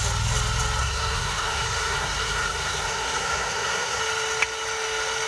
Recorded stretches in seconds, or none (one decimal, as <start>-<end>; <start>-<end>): 0.0-0.8; 4.0-5.3